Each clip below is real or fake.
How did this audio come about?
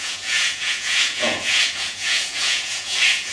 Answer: fake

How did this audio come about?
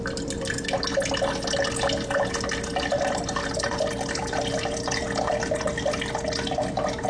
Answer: real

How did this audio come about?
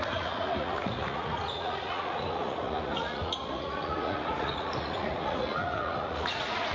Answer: fake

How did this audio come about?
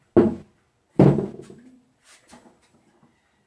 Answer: real